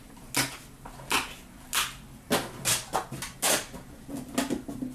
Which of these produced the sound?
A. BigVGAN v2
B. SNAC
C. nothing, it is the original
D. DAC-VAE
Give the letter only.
C